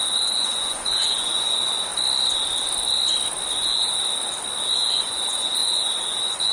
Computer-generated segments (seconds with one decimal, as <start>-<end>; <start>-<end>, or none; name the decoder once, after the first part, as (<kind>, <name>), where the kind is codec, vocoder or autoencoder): 0.0-1.9 (vocoder, Vocos); 3.5-4.0; 4.8-6.5